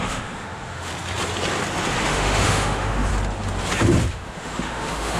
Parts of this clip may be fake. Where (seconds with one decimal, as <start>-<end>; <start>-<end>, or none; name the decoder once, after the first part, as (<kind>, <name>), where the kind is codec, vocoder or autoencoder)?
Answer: 0.0-0.9 (autoencoder, DAC-VAE); 2.0-3.1; 4.1-5.2